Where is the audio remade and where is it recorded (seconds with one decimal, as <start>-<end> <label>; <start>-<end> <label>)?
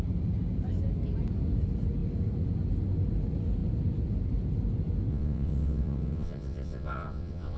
0.0-5.1 recorded; 5.1-7.6 remade